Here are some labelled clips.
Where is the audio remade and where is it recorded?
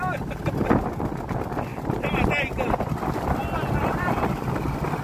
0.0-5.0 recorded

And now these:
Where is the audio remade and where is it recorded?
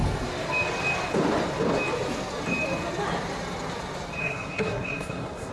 0.0-4.2 recorded; 4.2-5.5 remade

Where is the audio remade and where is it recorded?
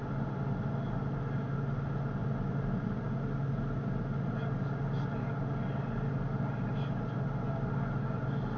0.0-8.6 recorded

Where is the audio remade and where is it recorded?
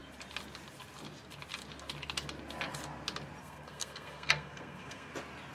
0.0-3.4 recorded; 3.4-5.1 remade; 5.1-5.5 recorded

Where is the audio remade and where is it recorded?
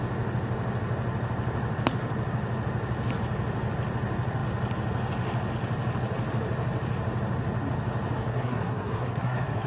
0.0-8.3 recorded; 8.3-9.7 remade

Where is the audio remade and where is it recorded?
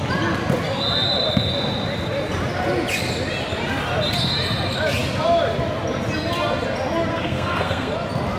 0.0-7.1 recorded; 7.1-7.9 remade; 7.9-8.4 recorded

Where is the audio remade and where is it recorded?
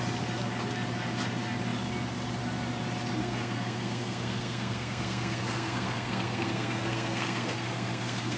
0.0-3.2 recorded; 3.2-8.4 remade